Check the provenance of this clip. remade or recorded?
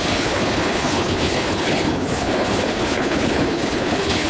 remade